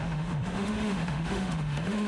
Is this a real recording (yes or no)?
no